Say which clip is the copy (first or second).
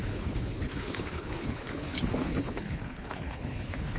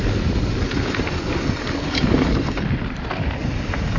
first